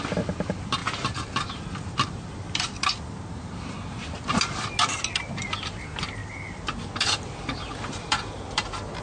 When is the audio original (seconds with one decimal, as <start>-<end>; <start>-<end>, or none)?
0.0-9.0